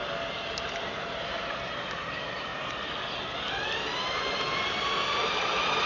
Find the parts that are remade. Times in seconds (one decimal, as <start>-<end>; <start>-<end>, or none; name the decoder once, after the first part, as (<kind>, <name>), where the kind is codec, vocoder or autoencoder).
0.5-2.5 (vocoder, BigVGAN v2); 5.1-5.9